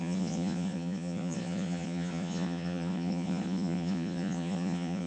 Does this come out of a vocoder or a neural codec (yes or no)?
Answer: yes